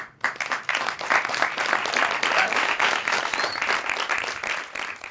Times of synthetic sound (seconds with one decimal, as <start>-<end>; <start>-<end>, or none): 2.5-3.2